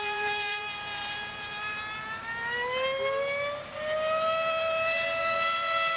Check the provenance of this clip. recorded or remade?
recorded